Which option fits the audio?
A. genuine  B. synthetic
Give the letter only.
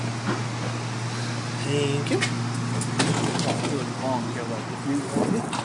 A